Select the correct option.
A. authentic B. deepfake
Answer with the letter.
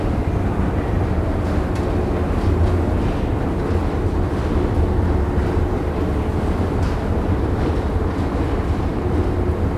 A